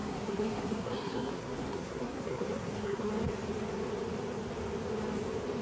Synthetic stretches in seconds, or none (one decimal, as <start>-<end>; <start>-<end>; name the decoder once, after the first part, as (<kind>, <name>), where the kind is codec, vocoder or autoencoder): 0.0-3.1 (codec, SNAC)